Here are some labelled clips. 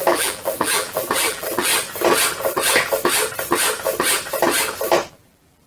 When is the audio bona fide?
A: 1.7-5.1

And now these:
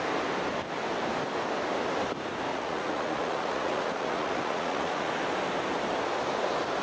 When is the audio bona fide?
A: 0.0-2.5; 5.1-6.8

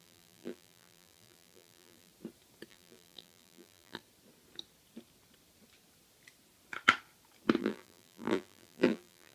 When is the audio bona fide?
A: 2.1-2.7; 4.0-7.6

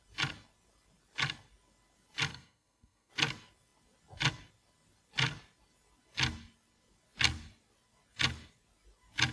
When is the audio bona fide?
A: 0.0-2.3; 3.1-9.3